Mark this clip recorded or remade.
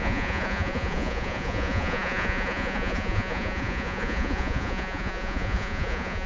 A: remade